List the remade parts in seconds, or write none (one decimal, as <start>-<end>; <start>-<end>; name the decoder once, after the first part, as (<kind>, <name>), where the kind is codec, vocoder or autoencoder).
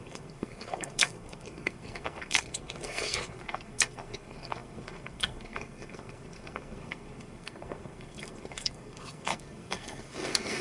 0.0-10.6 (codec, SNAC)